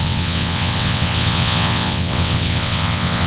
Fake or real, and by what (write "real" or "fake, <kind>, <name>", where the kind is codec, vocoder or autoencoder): fake, vocoder, WaveNeXt